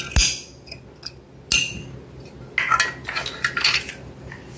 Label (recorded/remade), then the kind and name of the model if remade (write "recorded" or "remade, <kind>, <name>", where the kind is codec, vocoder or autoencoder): recorded